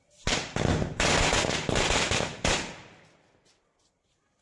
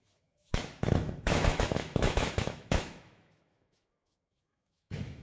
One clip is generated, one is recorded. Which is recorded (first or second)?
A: first